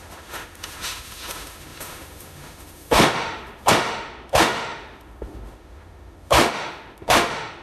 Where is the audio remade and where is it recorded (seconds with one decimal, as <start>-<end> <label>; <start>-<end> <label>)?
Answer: 0.0-7.6 remade